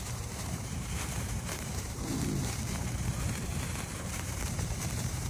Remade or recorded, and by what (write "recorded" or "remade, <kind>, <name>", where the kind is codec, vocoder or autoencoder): remade, vocoder, BigVGAN v2